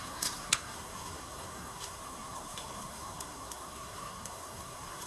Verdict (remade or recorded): remade